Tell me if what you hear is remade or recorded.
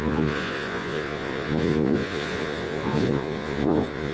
remade